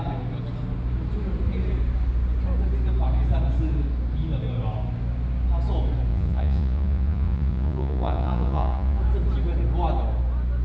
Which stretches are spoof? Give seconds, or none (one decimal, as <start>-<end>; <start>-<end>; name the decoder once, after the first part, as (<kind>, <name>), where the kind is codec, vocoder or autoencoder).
6.1-9.0 (vocoder, Vocos)